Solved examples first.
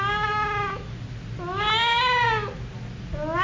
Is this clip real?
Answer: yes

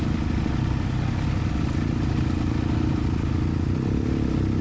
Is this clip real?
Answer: yes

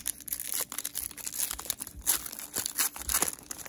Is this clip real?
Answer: yes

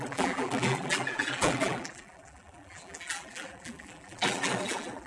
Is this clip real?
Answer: no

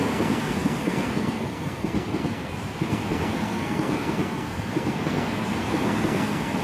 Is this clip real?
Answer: no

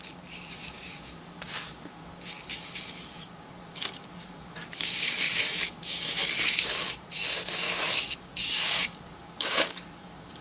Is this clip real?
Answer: no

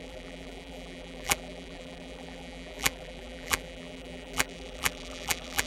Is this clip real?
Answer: no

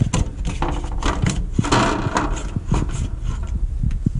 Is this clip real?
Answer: yes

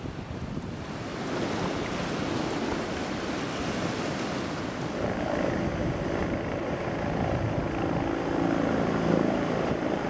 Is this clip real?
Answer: yes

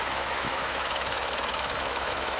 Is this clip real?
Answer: no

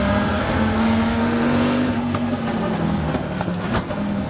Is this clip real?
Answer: no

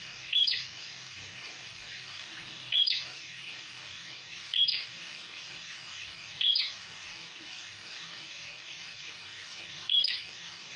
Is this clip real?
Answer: no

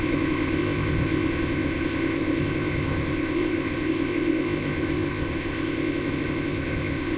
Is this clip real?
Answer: no